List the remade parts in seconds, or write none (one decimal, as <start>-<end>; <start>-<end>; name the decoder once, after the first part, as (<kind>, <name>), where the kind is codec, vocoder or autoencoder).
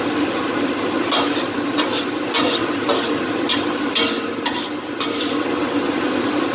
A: none